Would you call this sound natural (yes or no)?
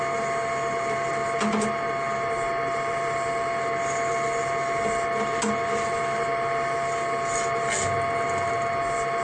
yes